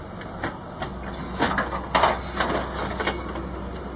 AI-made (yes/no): no